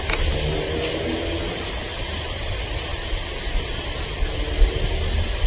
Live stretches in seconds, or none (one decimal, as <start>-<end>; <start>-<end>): 0.0-5.5